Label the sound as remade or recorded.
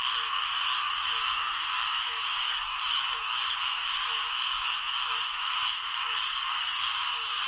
remade